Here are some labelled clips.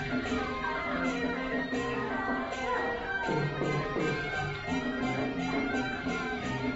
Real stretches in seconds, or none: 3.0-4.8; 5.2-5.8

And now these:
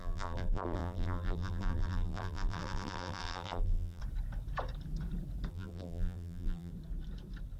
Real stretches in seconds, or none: 4.0-5.5; 6.7-7.6